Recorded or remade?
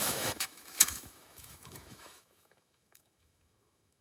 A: remade